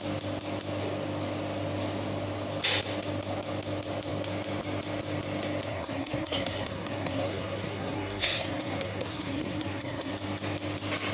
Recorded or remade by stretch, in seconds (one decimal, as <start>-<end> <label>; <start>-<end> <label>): 0.0-5.7 recorded; 5.7-10.1 remade; 10.1-11.1 recorded

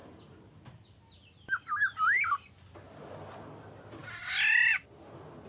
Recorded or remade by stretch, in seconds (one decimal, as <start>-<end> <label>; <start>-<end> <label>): 0.0-5.5 recorded

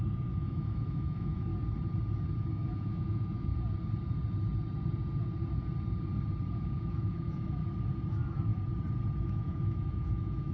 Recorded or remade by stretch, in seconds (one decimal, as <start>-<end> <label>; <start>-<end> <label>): 0.0-1.5 remade; 1.5-2.5 recorded; 2.5-3.5 remade; 3.5-6.5 recorded; 6.5-7.6 remade; 7.6-8.1 recorded; 8.1-8.5 remade; 8.5-9.2 recorded; 9.2-10.5 remade

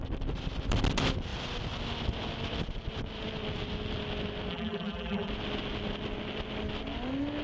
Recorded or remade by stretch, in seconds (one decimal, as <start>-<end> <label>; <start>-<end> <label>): 0.0-4.5 recorded; 4.5-5.3 remade; 5.3-7.4 recorded

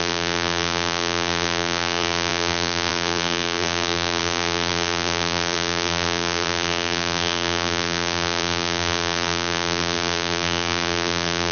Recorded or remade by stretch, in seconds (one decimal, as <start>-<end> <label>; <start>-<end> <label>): 0.0-11.5 remade

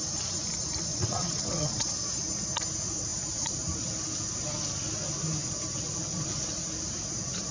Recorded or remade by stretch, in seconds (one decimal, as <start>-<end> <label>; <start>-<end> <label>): 0.0-0.9 recorded; 0.9-1.9 remade; 1.9-7.5 recorded

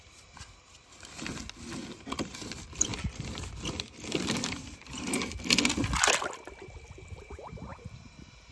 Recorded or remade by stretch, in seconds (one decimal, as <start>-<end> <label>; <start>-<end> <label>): 0.0-2.9 recorded; 2.9-5.1 remade; 5.1-8.5 recorded